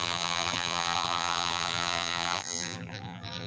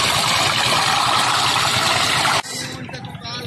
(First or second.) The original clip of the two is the second